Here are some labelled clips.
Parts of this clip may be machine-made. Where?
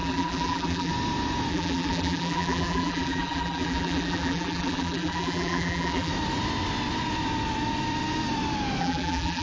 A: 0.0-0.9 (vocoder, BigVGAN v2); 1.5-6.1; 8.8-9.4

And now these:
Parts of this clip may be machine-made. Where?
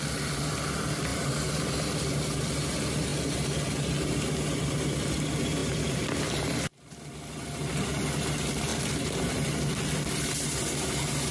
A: 1.1-1.7 (vocoder, BigVGAN v2)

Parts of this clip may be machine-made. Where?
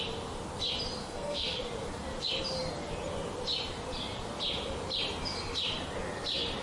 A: 1.0-1.6 (codec, SNAC)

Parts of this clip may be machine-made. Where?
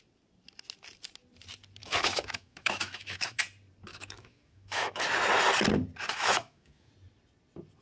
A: 1.8-3.4 (autoencoder, DAC-VAE); 3.9-5.0; 6.1-6.9